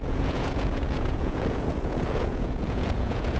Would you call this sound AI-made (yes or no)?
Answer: yes